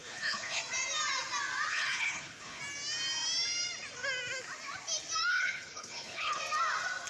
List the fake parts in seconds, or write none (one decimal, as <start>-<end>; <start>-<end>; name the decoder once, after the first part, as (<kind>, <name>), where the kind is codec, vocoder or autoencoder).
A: 0.0-0.6 (codec, HILCodec); 1.7-2.6; 5.3-6.4